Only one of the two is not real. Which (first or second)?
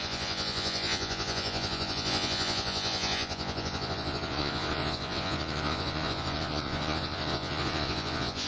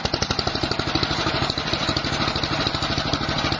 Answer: first